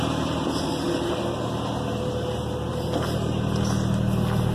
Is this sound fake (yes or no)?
no